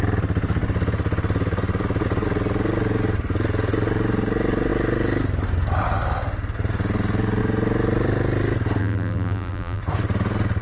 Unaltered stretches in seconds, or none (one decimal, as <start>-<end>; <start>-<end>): 0.0-8.8; 9.8-10.6